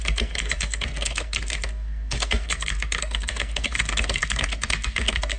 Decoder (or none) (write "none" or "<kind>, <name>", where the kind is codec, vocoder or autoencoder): codec, SNAC